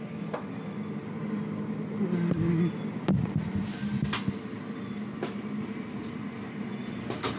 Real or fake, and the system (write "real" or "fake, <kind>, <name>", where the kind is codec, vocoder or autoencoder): real